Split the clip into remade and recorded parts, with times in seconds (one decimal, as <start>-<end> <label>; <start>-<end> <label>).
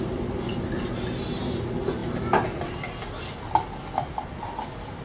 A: 0.0-5.0 recorded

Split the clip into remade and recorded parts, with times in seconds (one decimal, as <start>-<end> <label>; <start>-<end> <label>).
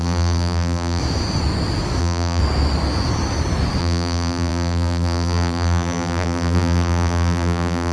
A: 0.0-1.0 remade; 1.0-2.0 recorded; 2.0-2.4 remade; 2.4-3.8 recorded; 3.8-7.9 remade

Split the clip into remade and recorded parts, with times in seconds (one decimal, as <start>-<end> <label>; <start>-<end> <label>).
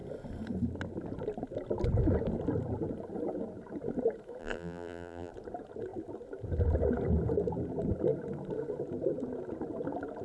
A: 0.0-4.4 recorded; 4.4-5.3 remade; 5.3-10.2 recorded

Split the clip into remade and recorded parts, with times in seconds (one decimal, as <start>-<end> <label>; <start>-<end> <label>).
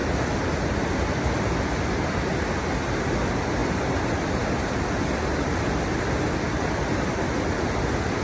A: 0.0-8.2 recorded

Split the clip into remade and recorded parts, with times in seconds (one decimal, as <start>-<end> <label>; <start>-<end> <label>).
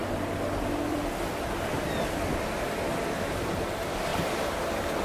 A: 0.0-5.0 remade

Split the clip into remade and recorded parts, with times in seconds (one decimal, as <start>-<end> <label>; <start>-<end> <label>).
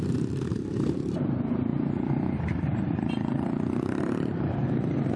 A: 0.0-5.2 remade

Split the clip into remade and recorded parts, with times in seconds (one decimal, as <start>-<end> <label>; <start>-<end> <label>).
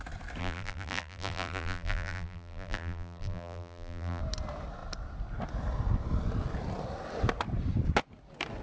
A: 0.0-0.4 recorded; 0.4-4.2 remade; 4.2-8.6 recorded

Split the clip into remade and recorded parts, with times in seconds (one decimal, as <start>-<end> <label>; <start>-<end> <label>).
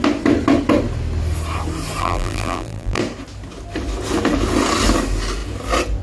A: 0.0-2.0 recorded; 2.0-3.0 remade; 3.0-6.0 recorded